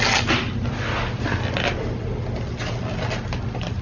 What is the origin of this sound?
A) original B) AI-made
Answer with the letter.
A